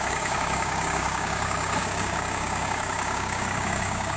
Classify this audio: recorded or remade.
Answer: remade